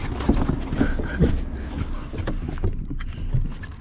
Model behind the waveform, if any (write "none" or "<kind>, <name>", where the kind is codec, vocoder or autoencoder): none